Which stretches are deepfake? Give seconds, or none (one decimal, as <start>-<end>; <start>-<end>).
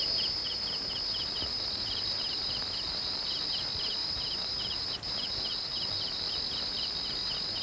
1.5-2.5; 2.9-3.6; 4.0-6.3